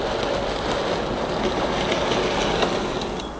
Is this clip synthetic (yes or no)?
no